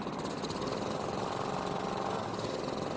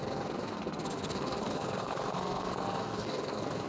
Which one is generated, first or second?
second